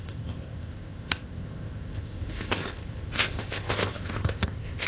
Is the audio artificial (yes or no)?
yes